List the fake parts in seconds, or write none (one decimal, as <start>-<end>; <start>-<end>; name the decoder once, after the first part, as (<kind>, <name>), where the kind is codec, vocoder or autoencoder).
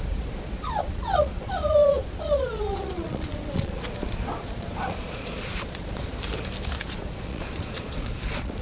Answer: 0.0-6.1 (vocoder, Vocos); 6.8-8.6